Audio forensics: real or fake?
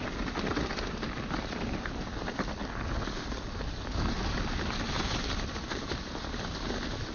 real